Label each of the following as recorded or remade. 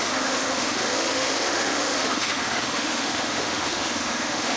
remade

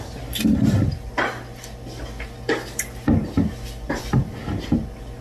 recorded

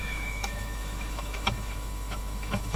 remade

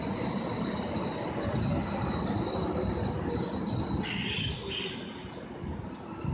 recorded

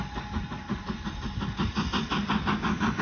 recorded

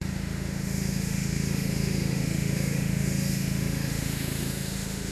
remade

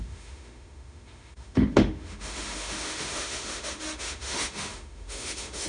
remade